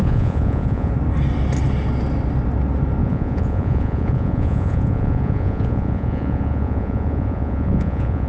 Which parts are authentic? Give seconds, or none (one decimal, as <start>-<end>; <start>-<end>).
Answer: 0.9-3.0